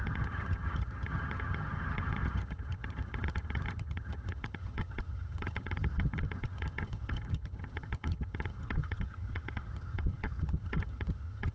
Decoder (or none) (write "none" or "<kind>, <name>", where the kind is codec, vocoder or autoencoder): vocoder, HiFi-GAN